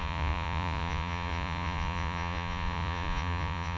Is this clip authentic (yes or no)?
no